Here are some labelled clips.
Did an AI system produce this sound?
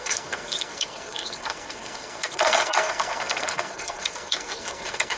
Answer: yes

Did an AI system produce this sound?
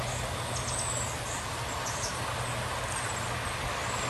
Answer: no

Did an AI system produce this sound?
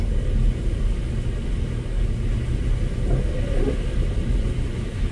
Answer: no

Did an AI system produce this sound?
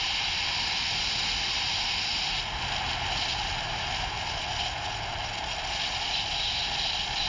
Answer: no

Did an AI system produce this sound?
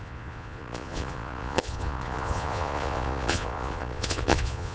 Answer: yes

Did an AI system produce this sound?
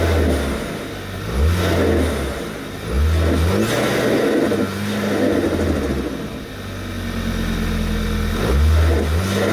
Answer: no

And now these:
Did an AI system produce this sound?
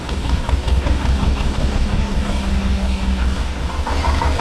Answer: yes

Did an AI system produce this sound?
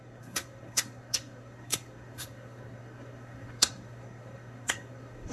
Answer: yes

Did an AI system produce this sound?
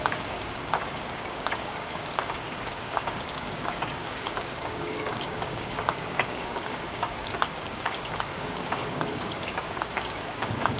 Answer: yes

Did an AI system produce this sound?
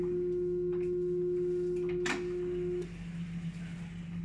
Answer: no